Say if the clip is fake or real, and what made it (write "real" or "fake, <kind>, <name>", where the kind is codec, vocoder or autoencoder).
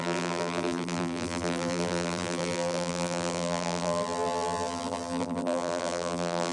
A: fake, vocoder, BigVGAN v2